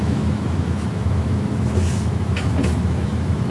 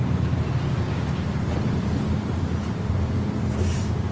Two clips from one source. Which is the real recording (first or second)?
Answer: second